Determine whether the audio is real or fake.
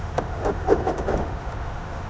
fake